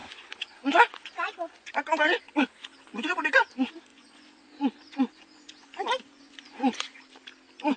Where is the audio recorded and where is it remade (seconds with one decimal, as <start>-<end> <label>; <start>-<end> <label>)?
0.0-2.2 remade; 2.2-3.9 recorded; 3.9-7.0 remade; 7.0-7.8 recorded